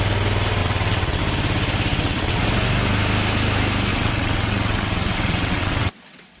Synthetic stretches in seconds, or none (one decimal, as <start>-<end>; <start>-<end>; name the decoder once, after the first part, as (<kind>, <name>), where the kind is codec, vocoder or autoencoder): 0.6-1.2 (vocoder, WaveNeXt); 1.9-2.4; 3.9-6.4